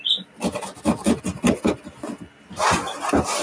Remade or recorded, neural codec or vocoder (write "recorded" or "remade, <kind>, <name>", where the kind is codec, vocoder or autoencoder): recorded